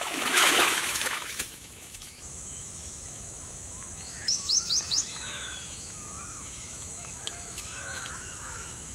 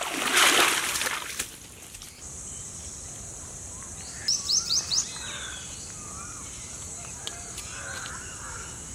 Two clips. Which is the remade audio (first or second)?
first